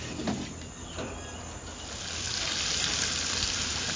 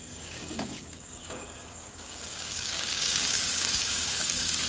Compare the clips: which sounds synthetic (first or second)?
second